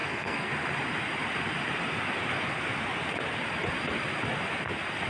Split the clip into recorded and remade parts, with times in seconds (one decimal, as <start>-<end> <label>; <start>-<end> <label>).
0.0-0.5 remade; 0.5-5.1 recorded